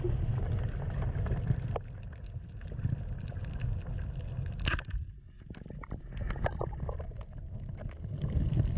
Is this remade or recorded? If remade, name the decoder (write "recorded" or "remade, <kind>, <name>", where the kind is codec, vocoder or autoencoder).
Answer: recorded